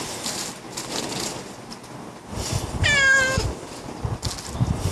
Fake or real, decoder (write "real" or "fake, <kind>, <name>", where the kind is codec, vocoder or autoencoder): real